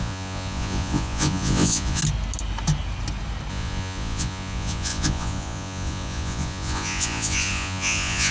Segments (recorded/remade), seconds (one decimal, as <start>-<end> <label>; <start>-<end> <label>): 0.0-2.0 remade; 2.0-3.5 recorded; 3.5-8.3 remade

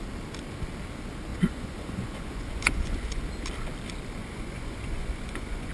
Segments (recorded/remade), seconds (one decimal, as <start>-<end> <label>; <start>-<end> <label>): 0.0-1.3 recorded; 1.3-3.2 remade; 3.2-4.2 recorded; 4.2-5.7 remade